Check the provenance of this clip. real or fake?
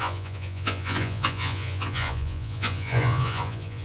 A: fake